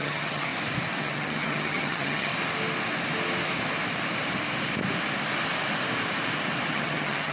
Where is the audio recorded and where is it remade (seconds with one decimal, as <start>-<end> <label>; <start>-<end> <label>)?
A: 0.0-0.5 remade; 0.5-1.0 recorded; 1.0-2.3 remade; 2.3-6.7 recorded; 6.7-7.3 remade